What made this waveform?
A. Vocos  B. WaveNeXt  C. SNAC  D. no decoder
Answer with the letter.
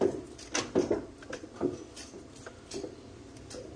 D